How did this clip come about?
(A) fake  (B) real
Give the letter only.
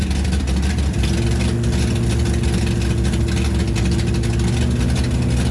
B